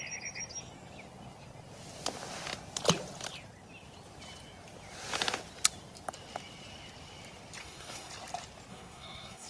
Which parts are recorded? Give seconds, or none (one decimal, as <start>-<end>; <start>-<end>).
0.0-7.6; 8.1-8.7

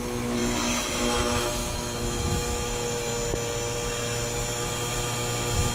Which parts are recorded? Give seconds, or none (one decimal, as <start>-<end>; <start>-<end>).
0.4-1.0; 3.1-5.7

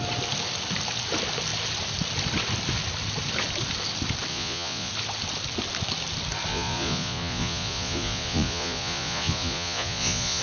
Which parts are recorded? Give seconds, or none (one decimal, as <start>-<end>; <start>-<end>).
0.0-4.3; 4.9-6.5